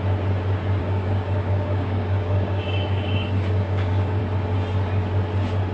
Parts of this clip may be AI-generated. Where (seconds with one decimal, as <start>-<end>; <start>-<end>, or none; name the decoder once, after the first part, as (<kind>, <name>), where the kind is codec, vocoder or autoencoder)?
0.8-4.2 (codec, DAC)